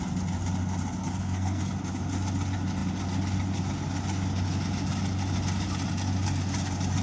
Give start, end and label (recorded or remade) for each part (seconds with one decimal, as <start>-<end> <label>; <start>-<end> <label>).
0.0-1.0 recorded; 1.0-1.7 remade; 1.7-7.0 recorded